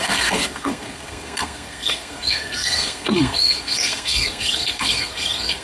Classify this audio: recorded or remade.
remade